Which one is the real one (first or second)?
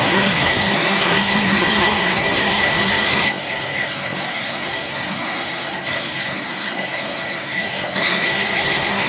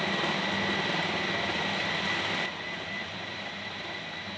second